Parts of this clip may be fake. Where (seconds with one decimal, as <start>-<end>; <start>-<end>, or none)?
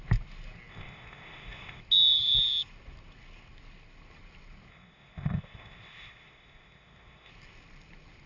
0.7-1.8; 4.7-7.3